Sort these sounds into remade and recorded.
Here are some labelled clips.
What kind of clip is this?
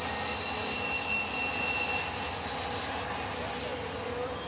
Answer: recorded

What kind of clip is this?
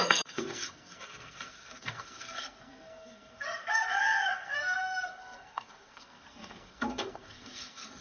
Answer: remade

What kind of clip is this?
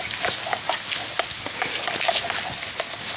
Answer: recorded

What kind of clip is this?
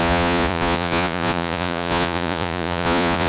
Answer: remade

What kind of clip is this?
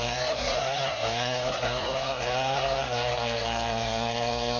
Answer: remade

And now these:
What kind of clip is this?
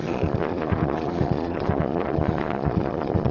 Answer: remade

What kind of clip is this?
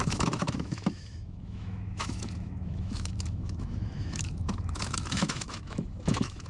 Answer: remade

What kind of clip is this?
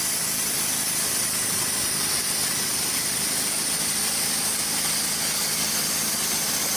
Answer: remade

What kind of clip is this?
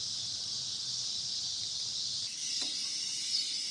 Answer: remade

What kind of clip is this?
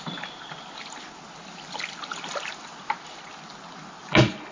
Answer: recorded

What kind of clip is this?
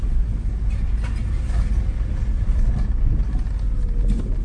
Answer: recorded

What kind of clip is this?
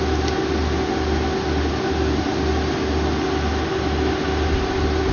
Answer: recorded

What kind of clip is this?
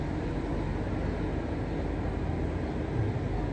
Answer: recorded